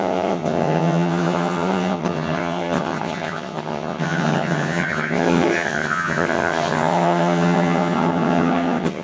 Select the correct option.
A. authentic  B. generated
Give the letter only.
B